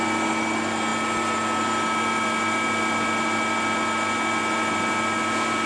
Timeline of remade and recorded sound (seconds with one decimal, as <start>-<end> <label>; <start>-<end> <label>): 0.0-5.7 recorded